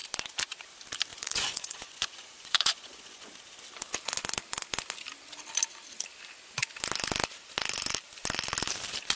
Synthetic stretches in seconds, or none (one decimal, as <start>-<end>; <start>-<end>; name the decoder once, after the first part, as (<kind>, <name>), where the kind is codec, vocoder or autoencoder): 1.1-3.3 (vocoder, Vocos)